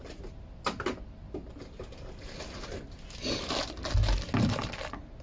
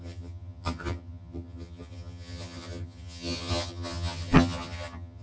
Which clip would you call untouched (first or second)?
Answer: first